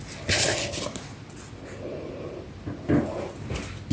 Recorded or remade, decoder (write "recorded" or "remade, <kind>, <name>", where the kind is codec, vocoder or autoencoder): recorded